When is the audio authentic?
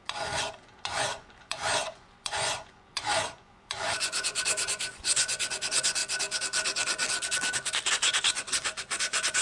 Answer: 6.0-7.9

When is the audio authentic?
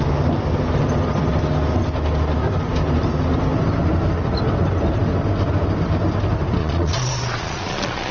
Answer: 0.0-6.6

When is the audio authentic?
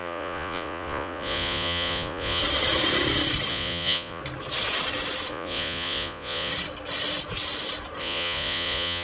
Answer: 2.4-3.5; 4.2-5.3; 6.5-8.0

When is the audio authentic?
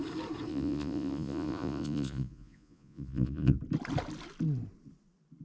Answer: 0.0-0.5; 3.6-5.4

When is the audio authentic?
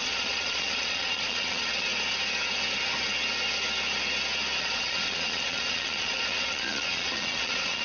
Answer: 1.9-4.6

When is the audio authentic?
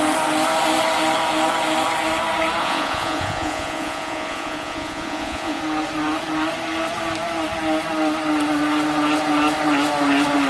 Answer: 0.0-2.6; 5.6-10.5